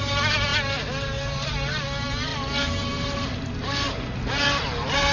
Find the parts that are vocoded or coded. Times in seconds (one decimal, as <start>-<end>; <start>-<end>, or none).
none